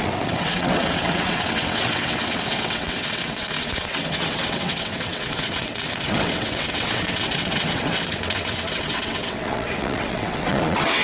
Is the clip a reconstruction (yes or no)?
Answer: yes